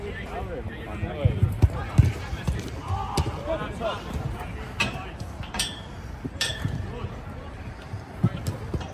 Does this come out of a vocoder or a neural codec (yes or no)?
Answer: no